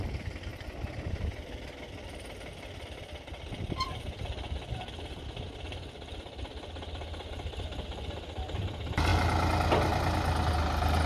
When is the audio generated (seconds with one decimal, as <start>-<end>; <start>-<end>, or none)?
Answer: none